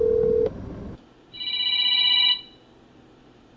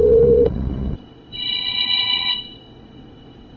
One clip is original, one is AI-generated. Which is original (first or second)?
first